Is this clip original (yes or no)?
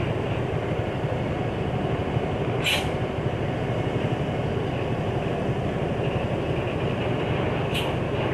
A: yes